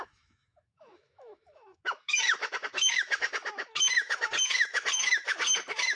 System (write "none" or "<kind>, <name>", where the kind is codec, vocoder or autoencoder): autoencoder, DAC-VAE